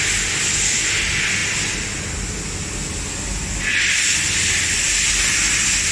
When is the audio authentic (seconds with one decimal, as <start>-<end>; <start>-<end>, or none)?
0.0-5.9